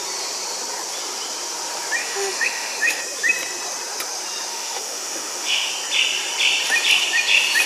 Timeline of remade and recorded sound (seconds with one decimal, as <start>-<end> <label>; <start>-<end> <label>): 0.0-2.0 recorded; 2.0-3.0 remade; 3.0-4.5 recorded; 4.5-5.7 remade; 5.7-7.7 recorded

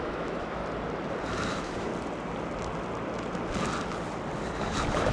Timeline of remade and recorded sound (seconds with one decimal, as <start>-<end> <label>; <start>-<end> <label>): 0.0-0.6 remade; 0.6-1.5 recorded; 1.5-1.9 remade; 1.9-5.1 recorded

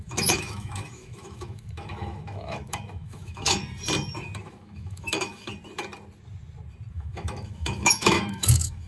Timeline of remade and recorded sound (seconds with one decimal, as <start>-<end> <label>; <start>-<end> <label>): 0.0-3.6 remade; 3.6-4.4 recorded; 4.4-5.5 remade; 5.5-6.9 recorded; 6.9-8.9 remade

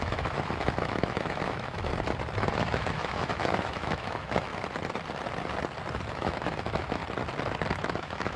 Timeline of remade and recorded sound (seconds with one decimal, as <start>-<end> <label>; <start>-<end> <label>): 0.0-1.9 remade; 1.9-2.5 recorded; 2.5-4.5 remade; 4.5-6.1 recorded; 6.1-7.0 remade; 7.0-7.8 recorded; 7.8-8.4 remade

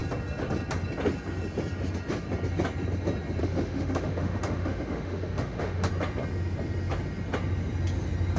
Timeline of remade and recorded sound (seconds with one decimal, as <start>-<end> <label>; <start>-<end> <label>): 0.0-3.4 recorded; 3.4-5.9 remade; 5.9-8.4 recorded

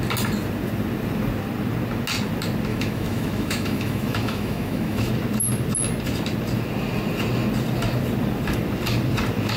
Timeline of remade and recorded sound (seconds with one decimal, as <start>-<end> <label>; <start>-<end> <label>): 0.0-2.7 recorded; 2.7-5.1 remade; 5.1-9.6 recorded